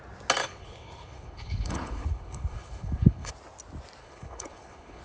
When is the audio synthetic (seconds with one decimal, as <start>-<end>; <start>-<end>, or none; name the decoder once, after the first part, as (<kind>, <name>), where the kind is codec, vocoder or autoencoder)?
0.4-3.3 (codec, HILCodec); 4.0-5.0